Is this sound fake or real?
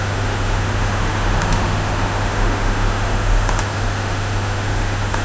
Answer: fake